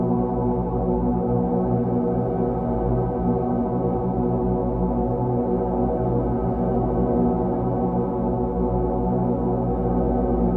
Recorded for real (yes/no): yes